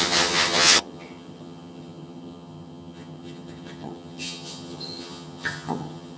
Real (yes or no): no